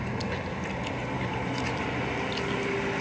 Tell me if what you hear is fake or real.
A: real